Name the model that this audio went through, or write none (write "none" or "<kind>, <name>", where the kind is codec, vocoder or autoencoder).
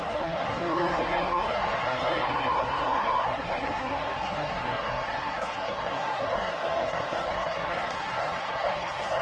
codec, SNAC